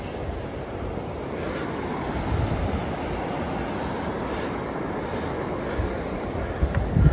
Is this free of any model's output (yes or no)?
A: yes